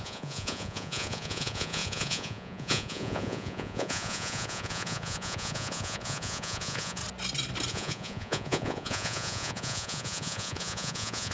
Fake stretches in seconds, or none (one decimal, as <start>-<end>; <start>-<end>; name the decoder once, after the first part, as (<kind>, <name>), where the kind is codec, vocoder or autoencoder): 0.0-7.0 (vocoder, Vocos); 7.7-11.3